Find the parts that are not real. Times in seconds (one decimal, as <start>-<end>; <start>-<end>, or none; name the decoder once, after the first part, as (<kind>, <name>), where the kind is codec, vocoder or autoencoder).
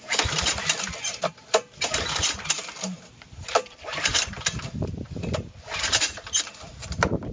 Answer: 0.0-4.1 (vocoder, BigVGAN v2); 6.4-7.3